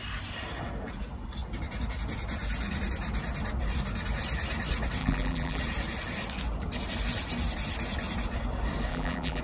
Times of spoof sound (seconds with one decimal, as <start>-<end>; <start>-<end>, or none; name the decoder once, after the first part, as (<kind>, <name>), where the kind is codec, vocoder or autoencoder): 5.0-5.6 (vocoder, BigVGAN v2); 8.9-9.4